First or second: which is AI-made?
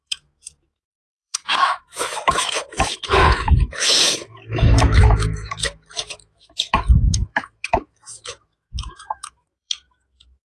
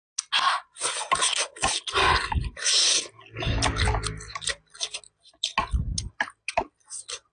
first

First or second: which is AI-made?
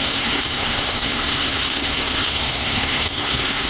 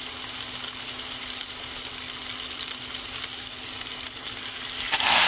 first